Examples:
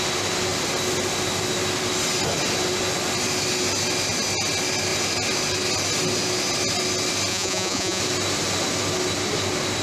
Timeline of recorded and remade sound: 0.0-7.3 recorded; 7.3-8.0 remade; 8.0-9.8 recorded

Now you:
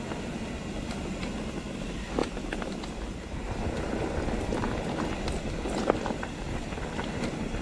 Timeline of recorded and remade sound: 0.0-7.6 recorded

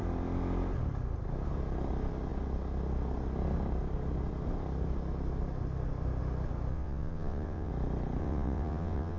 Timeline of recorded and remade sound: 0.0-6.7 recorded; 6.7-7.7 remade; 7.7-8.2 recorded; 8.2-9.2 remade

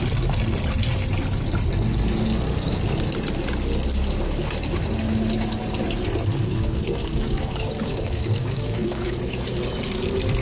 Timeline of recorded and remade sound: 0.0-6.3 recorded; 6.3-9.2 remade; 9.2-10.4 recorded